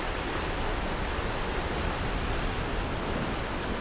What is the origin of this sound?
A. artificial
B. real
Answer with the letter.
B